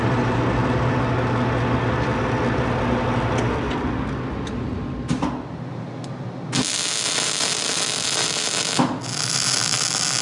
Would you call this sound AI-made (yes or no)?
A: no